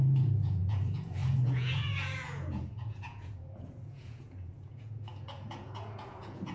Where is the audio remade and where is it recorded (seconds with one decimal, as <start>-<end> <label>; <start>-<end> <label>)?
0.0-6.5 remade